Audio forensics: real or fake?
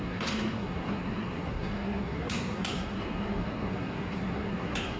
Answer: fake